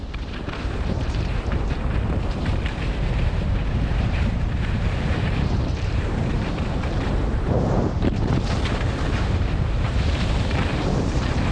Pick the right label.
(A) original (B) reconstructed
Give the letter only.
B